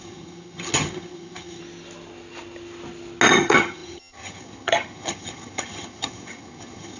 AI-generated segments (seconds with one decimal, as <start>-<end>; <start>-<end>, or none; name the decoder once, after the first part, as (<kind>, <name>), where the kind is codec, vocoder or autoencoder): 0.0-1.6 (vocoder, HiFi-GAN); 3.3-7.0